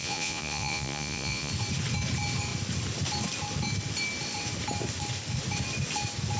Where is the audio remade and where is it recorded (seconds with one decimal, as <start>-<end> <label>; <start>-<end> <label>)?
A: 0.0-1.5 remade; 1.5-6.4 recorded